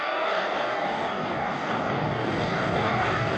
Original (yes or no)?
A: no